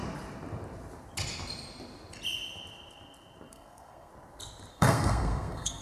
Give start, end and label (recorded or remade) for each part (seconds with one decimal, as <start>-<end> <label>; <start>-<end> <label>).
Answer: 0.0-3.5 recorded; 3.5-4.1 remade; 4.1-4.7 recorded; 4.7-5.8 remade